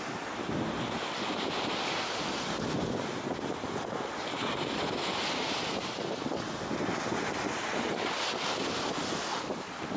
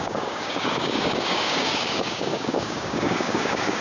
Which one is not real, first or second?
second